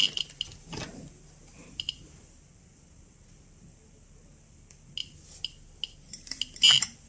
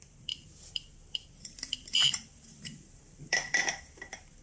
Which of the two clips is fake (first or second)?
second